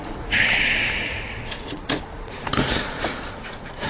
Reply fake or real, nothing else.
fake